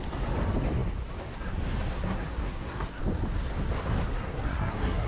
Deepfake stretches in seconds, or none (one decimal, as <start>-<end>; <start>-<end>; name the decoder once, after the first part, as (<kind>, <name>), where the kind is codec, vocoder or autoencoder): 1.9-3.0 (codec, SNAC); 4.1-5.1